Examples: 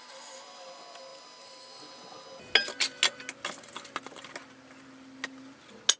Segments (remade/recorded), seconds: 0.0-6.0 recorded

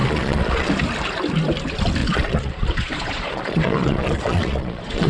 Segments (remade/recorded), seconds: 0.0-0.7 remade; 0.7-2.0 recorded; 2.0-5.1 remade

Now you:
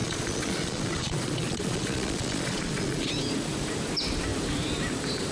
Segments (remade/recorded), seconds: 0.0-3.1 remade; 3.1-5.3 recorded

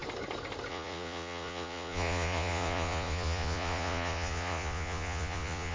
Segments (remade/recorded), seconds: 0.0-0.7 recorded; 0.7-5.7 remade

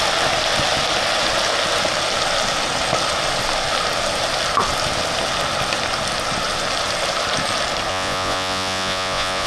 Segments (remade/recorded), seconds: 0.0-7.9 recorded; 7.9-9.5 remade